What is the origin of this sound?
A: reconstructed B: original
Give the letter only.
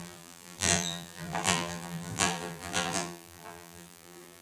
A